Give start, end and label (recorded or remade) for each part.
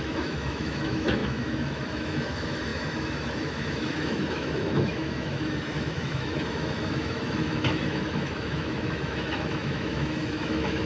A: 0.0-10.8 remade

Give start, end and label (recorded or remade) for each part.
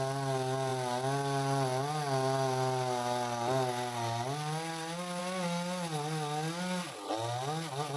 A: 0.0-8.0 recorded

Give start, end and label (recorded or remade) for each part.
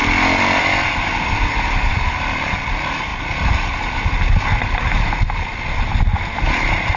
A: 0.0-7.0 recorded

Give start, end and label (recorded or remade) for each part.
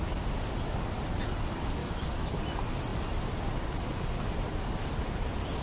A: 0.0-1.8 recorded; 1.8-2.4 remade; 2.4-5.6 recorded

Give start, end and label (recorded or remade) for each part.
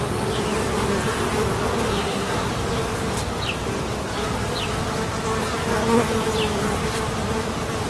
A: 0.0-1.9 recorded; 1.9-2.5 remade; 2.5-7.9 recorded